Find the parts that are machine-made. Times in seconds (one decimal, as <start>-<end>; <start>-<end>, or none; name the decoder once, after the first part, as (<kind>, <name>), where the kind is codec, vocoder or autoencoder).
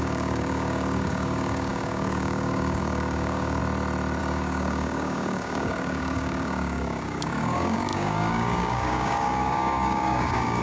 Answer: 0.0-3.6 (codec, DAC); 4.2-10.6